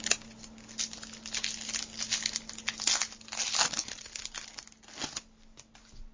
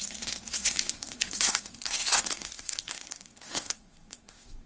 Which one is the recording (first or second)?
first